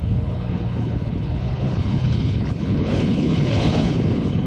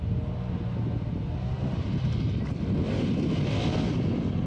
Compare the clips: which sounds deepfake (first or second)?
first